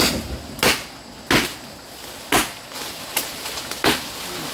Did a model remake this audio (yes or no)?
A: no